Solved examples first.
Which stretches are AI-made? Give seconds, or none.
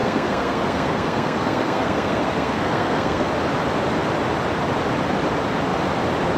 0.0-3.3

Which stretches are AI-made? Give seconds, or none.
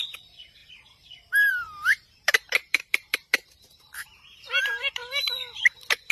0.0-0.6; 1.5-5.0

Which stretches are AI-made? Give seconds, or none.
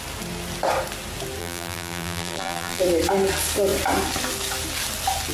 1.4-2.8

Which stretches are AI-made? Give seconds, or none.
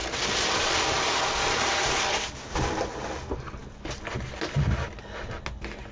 none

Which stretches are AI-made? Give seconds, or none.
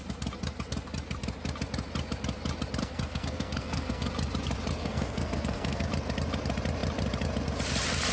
2.8-4.1; 4.8-5.9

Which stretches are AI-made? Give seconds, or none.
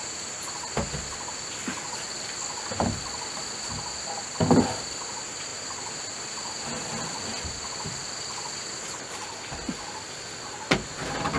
none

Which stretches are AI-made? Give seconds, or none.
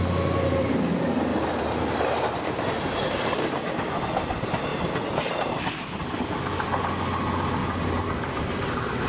1.3-3.7; 7.6-9.1